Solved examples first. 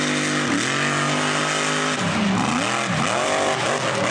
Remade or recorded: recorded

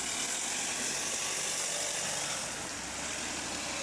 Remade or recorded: recorded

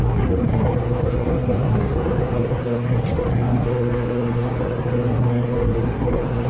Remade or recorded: remade